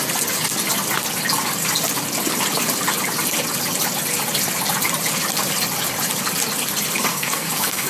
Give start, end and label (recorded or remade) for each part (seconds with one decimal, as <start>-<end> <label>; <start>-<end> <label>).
0.0-7.1 recorded; 7.1-7.9 remade